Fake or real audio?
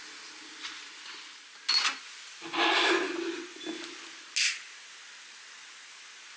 real